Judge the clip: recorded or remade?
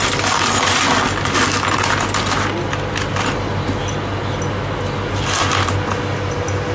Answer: recorded